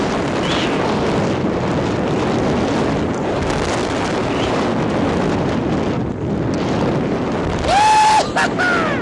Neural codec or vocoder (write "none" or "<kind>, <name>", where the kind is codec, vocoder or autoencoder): none